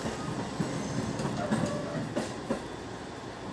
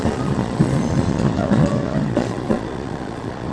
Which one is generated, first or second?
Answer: second